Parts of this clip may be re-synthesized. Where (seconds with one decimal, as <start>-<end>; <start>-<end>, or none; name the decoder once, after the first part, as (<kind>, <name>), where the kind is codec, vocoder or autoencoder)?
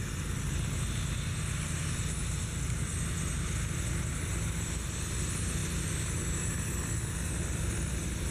none